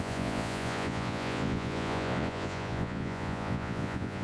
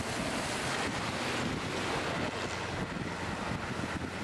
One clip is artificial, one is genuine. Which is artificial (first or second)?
first